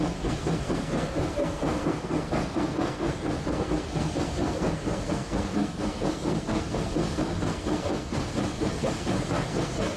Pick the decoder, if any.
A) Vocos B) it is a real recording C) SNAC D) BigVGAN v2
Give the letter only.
C